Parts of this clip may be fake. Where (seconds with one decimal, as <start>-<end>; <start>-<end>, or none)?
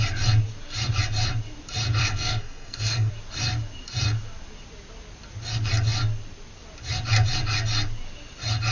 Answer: 2.0-3.1